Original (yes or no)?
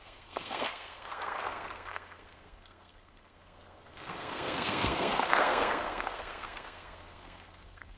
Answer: no